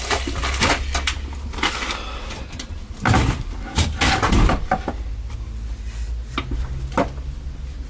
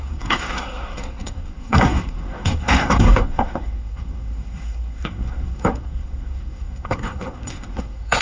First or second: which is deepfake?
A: second